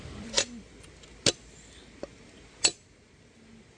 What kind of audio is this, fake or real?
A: real